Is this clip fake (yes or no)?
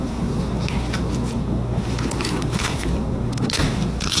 yes